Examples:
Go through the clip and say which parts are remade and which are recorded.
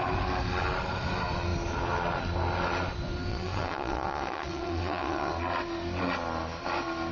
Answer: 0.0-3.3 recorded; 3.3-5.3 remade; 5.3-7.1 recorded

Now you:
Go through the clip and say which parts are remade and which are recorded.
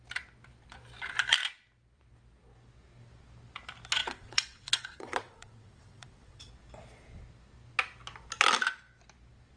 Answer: 0.0-4.0 recorded; 4.0-6.5 remade; 6.5-9.6 recorded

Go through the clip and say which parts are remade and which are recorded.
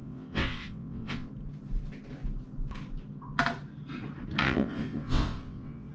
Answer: 0.0-1.3 remade; 1.3-4.4 recorded; 4.4-5.9 remade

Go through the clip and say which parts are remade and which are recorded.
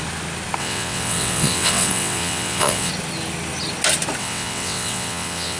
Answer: 0.0-0.6 recorded; 0.6-2.9 remade; 2.9-4.2 recorded; 4.2-5.6 remade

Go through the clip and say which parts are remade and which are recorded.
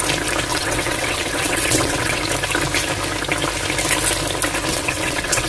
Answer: 0.0-0.5 recorded; 0.5-2.2 remade; 2.2-4.7 recorded; 4.7-5.5 remade